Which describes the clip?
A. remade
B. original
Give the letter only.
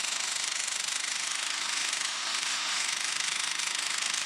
A